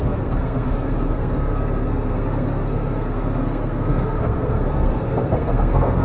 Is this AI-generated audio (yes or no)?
yes